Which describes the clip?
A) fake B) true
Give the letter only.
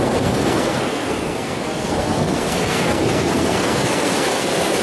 A